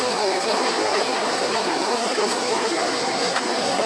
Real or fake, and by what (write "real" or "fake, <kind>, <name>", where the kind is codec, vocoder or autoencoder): fake, codec, SNAC